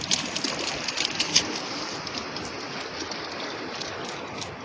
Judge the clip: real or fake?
real